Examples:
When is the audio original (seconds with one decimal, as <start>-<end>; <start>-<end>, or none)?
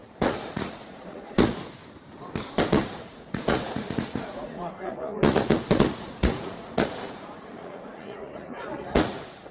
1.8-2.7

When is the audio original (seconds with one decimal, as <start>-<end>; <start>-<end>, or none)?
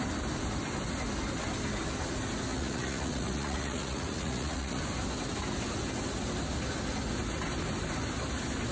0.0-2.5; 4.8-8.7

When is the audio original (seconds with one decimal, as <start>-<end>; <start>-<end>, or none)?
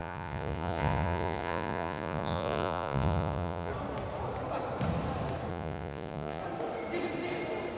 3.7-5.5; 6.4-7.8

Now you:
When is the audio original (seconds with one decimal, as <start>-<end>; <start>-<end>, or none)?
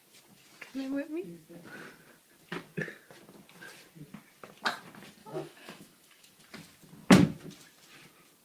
0.0-5.2; 6.4-8.4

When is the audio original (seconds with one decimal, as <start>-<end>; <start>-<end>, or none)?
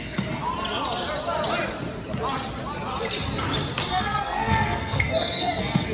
0.4-3.9